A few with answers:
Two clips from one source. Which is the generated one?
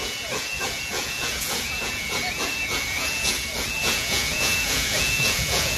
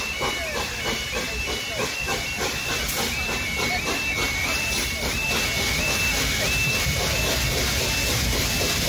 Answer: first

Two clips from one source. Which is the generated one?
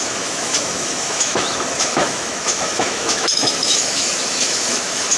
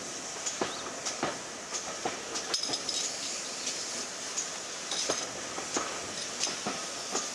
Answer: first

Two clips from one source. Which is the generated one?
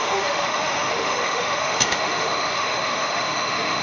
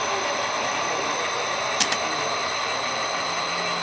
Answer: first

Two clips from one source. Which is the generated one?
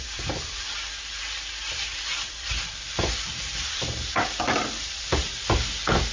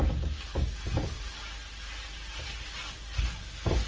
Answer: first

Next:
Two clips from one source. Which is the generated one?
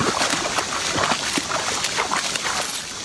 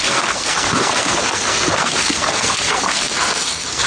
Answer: second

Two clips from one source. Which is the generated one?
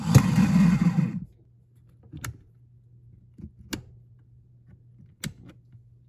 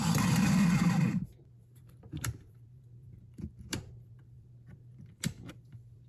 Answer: second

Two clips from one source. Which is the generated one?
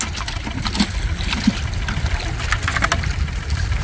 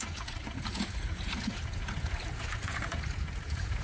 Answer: second